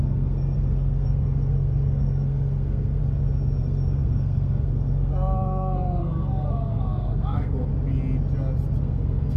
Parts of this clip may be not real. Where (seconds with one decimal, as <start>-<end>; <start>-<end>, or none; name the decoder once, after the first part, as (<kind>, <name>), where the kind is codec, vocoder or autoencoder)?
0.0-3.0 (codec, SNAC); 3.6-7.7; 8.8-9.4